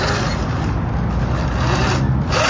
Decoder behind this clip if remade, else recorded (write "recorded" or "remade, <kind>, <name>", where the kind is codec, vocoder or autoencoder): recorded